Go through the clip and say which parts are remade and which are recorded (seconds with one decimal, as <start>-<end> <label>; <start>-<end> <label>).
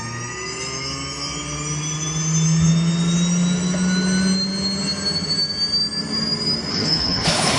0.0-6.7 recorded; 6.7-7.6 remade